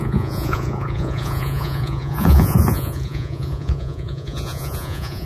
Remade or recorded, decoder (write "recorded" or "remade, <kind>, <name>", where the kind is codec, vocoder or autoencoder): remade, vocoder, Vocos